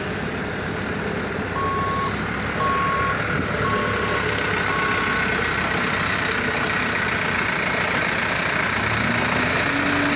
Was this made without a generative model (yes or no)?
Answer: yes